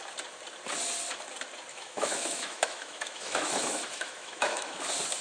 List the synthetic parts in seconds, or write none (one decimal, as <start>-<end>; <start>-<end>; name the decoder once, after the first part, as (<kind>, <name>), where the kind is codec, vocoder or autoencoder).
1.7-4.8 (autoencoder, DAC-VAE)